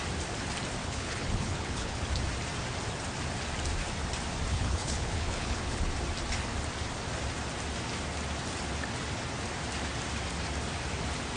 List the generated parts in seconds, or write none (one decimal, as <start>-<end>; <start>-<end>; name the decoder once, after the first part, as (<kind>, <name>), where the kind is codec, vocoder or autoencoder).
0.8-2.0 (codec, HILCodec); 4.5-5.9